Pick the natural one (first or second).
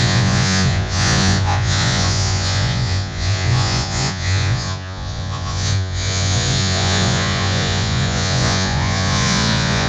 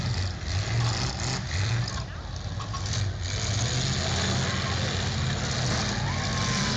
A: second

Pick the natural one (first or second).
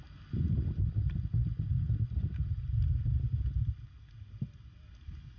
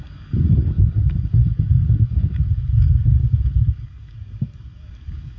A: first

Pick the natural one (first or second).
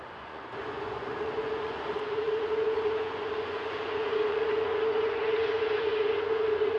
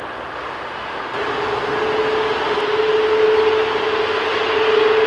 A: second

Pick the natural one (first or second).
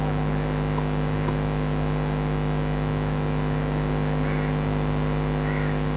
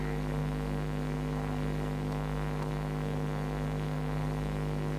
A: first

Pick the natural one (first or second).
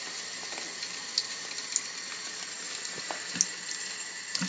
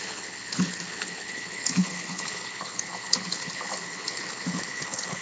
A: first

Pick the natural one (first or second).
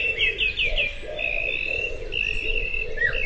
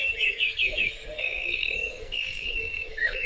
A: first